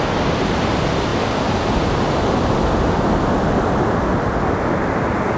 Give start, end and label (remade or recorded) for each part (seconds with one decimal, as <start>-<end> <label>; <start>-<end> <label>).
0.0-5.4 recorded